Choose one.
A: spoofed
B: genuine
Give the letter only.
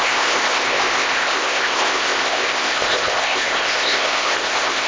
A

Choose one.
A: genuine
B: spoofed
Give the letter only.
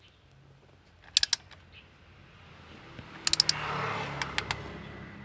A